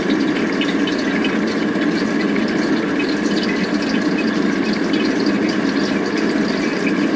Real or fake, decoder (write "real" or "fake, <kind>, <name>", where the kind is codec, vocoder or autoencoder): real